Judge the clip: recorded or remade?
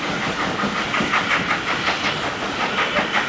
recorded